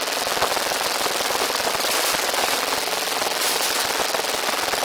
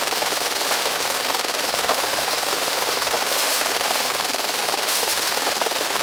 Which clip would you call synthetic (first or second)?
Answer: second